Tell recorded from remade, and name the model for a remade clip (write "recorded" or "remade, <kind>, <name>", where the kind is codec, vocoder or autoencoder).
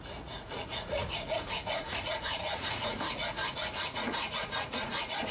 remade, vocoder, Vocos